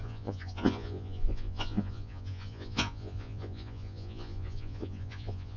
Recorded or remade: remade